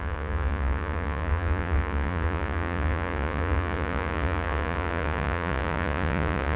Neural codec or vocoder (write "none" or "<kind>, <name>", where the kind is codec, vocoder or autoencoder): vocoder, Vocos